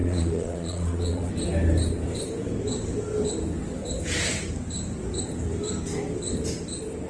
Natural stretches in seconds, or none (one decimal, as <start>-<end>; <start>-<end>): 1.3-7.1

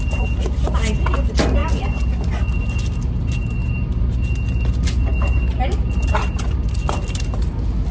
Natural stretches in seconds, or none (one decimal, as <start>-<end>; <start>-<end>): 0.0-7.9

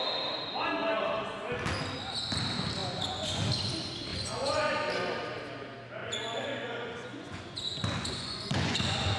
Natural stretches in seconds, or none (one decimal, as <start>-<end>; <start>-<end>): 0.0-2.8; 3.4-4.1; 4.7-6.0

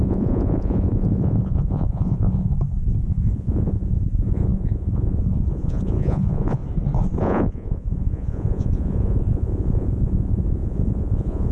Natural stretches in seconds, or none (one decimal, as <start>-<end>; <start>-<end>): 2.5-3.1; 6.6-7.2

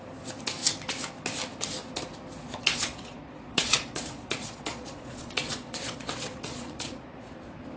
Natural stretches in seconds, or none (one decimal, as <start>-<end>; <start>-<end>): 0.0-2.6; 7.3-7.8

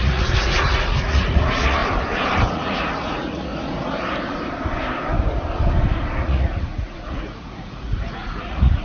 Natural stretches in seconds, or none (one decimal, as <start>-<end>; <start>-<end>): 1.8-2.5; 3.5-6.2